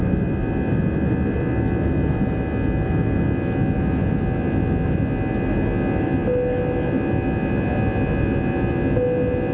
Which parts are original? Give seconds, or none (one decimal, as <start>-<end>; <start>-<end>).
0.0-9.5